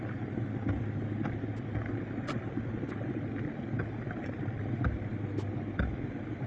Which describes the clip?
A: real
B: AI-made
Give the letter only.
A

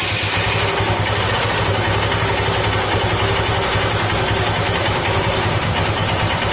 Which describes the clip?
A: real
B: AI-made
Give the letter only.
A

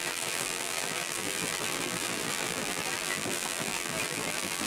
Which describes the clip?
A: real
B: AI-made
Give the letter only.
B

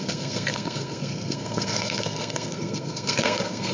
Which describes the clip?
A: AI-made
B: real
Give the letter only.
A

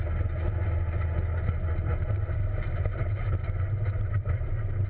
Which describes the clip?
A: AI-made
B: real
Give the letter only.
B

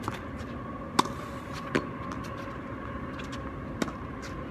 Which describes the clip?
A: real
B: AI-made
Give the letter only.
A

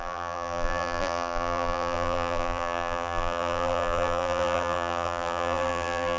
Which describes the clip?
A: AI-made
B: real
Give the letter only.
A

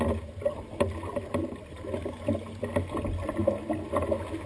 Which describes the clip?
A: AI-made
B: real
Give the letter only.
B